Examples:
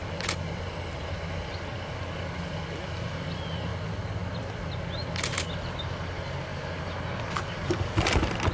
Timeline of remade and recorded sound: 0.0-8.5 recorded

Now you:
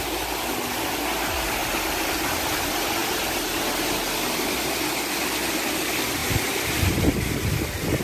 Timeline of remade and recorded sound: 0.0-8.0 recorded